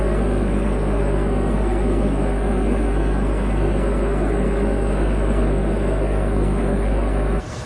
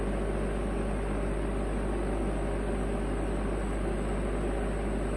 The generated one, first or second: first